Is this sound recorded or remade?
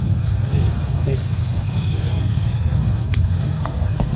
remade